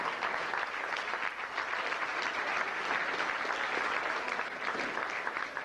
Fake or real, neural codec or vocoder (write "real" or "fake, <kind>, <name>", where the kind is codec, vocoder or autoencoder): real